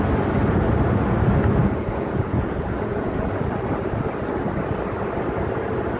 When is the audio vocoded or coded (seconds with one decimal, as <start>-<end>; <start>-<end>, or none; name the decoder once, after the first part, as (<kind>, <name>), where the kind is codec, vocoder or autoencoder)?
1.6-3.4 (vocoder, Vocos)